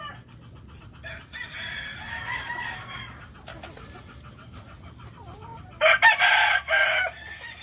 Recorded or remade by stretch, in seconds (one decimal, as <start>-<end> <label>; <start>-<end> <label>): 0.0-7.6 recorded